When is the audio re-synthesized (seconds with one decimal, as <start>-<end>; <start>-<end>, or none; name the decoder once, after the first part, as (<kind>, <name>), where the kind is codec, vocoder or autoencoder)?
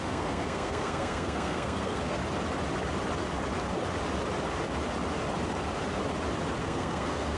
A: 0.0-2.2 (codec, SNAC); 6.6-7.4